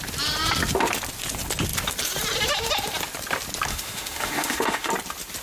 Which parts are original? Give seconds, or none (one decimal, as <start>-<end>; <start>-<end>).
0.0-3.7; 4.9-5.4